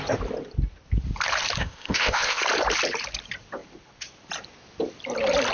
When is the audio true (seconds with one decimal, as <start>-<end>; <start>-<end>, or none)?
0.0-1.6; 2.4-5.5